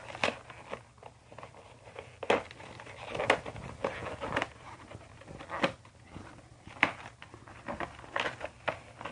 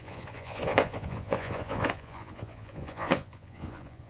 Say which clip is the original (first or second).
first